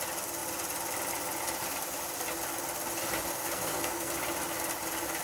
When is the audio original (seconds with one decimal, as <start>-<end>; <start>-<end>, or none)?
0.0-3.3; 4.1-5.2